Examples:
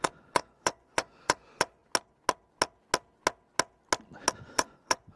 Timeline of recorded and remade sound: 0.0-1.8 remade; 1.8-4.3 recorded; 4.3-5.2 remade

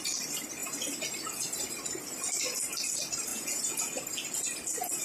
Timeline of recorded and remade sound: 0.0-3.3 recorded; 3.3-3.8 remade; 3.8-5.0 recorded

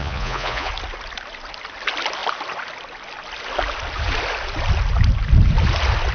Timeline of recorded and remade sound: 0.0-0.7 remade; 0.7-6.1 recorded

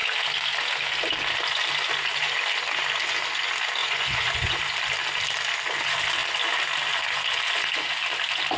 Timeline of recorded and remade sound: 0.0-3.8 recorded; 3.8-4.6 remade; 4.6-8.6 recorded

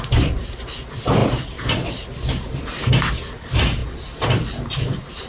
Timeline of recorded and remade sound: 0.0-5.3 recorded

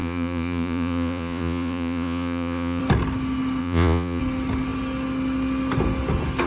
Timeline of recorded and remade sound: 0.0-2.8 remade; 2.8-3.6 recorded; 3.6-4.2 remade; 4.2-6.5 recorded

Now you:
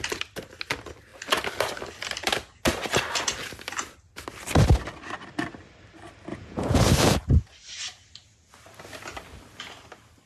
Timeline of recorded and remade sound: 0.0-6.3 recorded; 6.3-6.8 remade; 6.8-10.3 recorded

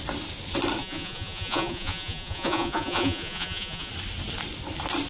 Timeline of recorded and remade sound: 0.0-0.8 recorded; 0.8-3.9 remade; 3.9-5.1 recorded